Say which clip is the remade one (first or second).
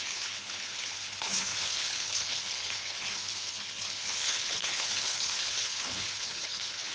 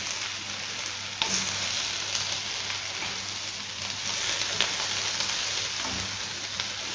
first